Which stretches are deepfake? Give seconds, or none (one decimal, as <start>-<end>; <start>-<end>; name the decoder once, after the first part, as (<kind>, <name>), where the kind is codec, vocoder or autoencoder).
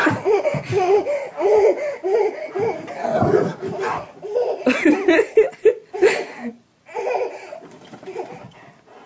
0.0-9.1 (vocoder, BigVGAN v2)